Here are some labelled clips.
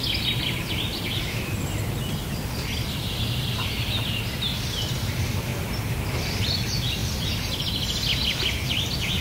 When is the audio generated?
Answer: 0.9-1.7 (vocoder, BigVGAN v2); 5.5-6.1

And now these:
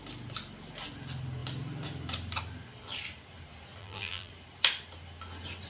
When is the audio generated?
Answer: 3.8-4.3 (vocoder, BigVGAN v2)